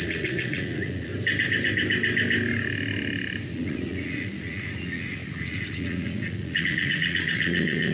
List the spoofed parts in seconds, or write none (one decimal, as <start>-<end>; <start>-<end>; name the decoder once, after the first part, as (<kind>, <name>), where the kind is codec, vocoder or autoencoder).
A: 0.0-1.1 (vocoder, Vocos); 3.5-7.9